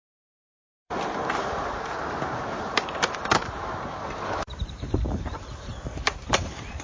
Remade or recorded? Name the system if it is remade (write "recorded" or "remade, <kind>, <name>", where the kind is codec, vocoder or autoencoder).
remade, vocoder, BigVGAN v2